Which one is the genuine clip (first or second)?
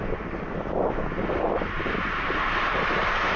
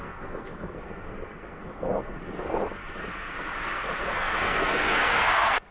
first